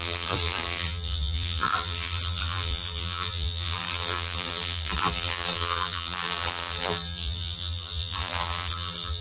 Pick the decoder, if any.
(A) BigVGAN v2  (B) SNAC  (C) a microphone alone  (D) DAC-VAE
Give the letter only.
A